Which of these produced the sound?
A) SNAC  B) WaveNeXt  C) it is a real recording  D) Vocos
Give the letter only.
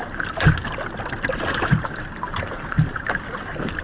C